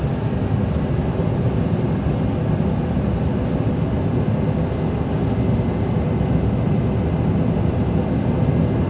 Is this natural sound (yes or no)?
yes